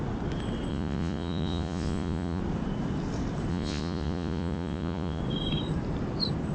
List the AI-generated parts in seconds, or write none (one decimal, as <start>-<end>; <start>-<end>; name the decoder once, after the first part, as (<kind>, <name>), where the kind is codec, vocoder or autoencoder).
0.7-2.4 (vocoder, Vocos); 3.5-5.2